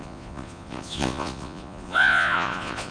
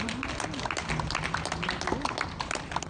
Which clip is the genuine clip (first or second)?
second